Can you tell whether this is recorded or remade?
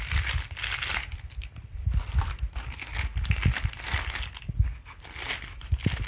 recorded